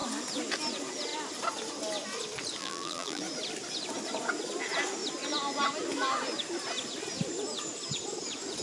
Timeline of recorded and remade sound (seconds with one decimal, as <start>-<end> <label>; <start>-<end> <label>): 0.0-2.6 recorded; 2.6-3.2 remade; 3.2-8.6 recorded